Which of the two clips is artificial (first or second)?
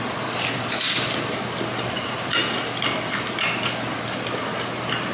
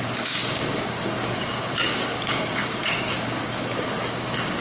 second